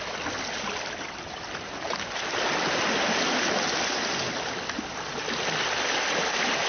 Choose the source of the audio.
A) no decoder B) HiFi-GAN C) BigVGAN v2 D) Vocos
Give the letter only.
A